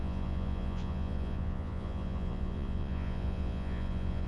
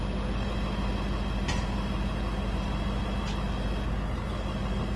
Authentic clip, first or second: second